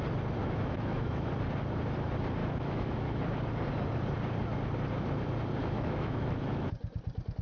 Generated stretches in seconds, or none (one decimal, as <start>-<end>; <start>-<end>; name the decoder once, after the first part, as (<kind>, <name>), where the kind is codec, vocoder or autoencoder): 0.4-1.3 (autoencoder, DAC-VAE); 2.4-3.2; 5.6-6.7